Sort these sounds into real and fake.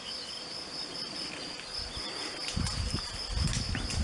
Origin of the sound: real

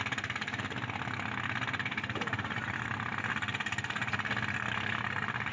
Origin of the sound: real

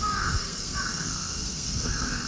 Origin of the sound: fake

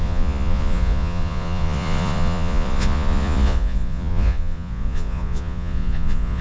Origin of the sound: fake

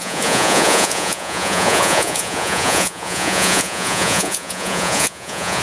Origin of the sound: fake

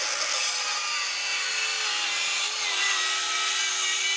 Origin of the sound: real